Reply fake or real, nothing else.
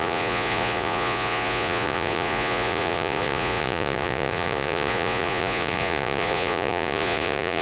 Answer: fake